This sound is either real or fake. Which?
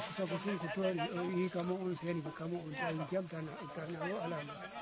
real